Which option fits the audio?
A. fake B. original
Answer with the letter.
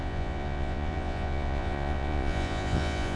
A